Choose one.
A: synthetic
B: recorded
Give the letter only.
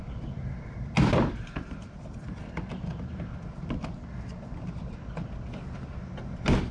B